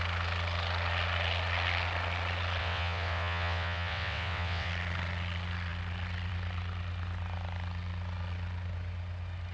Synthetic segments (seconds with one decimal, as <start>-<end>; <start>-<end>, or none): 2.6-4.7